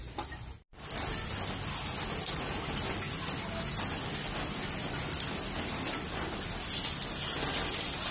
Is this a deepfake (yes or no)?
no